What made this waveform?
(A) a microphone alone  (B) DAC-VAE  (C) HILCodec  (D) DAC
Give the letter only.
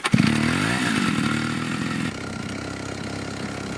A